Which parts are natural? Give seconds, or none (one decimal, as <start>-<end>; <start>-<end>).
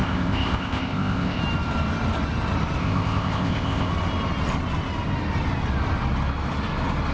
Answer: 1.4-2.8; 3.9-7.1